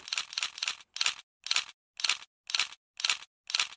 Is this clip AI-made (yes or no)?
no